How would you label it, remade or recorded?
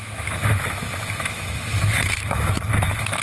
remade